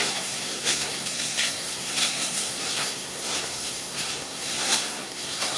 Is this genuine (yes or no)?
no